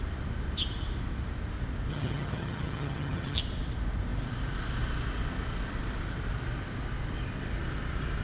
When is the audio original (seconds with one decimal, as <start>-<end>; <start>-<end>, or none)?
0.0-1.9; 3.4-8.2